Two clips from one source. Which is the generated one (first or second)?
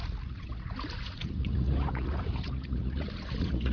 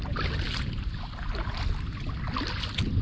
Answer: first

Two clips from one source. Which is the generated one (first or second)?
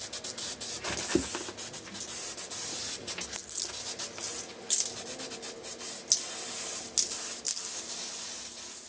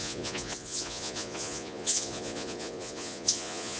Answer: second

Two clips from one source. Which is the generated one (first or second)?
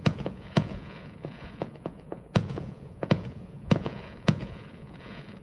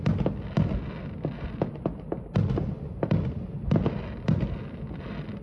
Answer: first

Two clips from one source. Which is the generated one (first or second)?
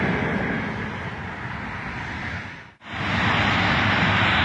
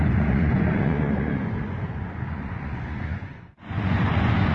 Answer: second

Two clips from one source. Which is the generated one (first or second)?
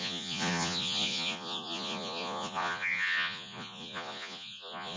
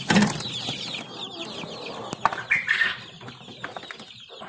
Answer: first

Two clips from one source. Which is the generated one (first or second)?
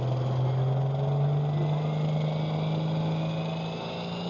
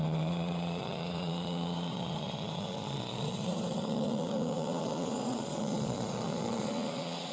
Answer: second